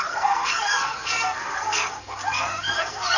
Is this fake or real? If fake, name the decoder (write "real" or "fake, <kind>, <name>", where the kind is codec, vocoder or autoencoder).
fake, codec, SNAC